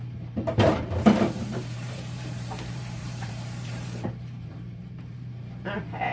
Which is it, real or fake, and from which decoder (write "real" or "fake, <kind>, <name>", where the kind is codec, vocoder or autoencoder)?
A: fake, vocoder, BigVGAN v2